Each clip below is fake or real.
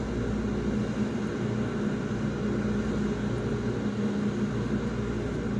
real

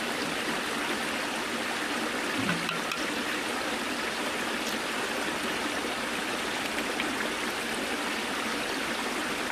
real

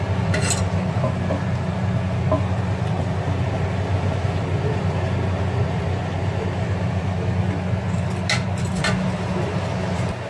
real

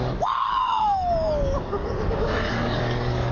fake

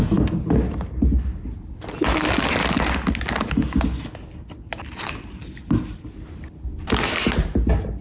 real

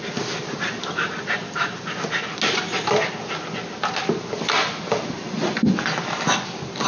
real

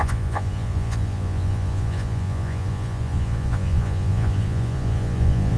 fake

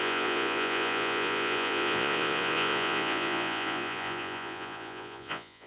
fake